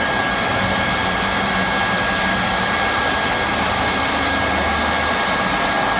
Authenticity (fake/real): real